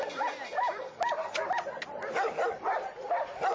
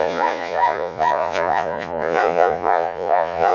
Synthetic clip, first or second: second